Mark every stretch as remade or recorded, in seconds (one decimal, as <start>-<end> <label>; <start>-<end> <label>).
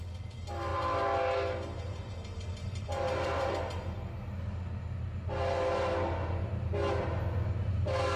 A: 0.0-2.6 recorded; 2.6-3.5 remade; 3.5-8.2 recorded